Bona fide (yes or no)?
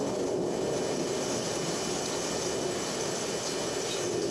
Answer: yes